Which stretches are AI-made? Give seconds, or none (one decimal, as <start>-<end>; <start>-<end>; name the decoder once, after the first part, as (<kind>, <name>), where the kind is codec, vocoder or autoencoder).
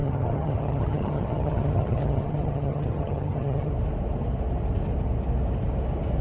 0.0-3.7 (vocoder, HiFi-GAN)